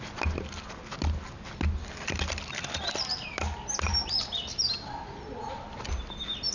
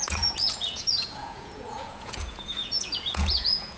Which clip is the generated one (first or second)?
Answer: second